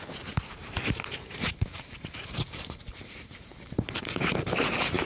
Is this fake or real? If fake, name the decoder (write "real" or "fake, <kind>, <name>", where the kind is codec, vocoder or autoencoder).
fake, vocoder, BigVGAN v2